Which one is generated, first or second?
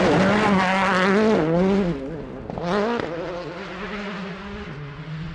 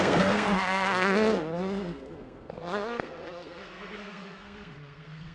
second